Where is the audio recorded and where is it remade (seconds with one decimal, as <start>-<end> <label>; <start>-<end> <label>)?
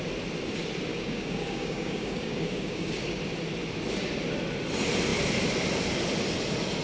0.0-0.9 recorded; 0.9-3.2 remade; 3.2-6.8 recorded